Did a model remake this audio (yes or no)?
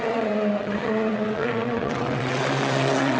yes